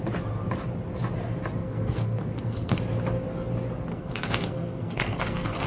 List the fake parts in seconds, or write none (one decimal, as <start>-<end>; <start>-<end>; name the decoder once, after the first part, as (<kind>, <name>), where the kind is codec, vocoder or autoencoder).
1.6-2.8 (codec, SNAC); 3.9-5.7